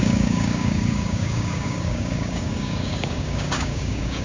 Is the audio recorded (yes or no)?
no